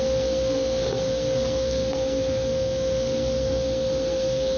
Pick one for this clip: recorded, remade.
remade